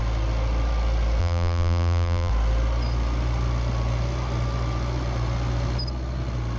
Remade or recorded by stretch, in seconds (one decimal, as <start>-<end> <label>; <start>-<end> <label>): 0.0-1.2 recorded; 1.2-2.3 remade; 2.3-6.6 recorded

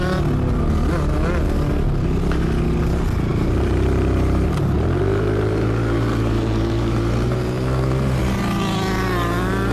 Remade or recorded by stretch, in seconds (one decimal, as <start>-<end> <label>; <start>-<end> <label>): 0.0-3.3 recorded; 3.3-8.2 remade; 8.2-9.7 recorded